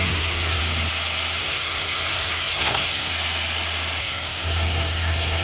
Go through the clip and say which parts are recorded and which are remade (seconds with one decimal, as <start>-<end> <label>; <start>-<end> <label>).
0.0-0.6 remade; 0.6-1.4 recorded; 1.4-3.1 remade; 3.1-4.0 recorded; 4.0-5.4 remade